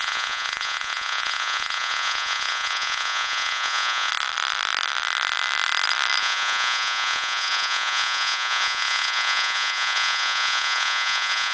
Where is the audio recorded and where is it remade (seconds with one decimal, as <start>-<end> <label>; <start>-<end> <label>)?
0.0-4.1 remade; 4.1-6.2 recorded; 6.2-11.5 remade